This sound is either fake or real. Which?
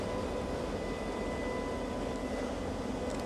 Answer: real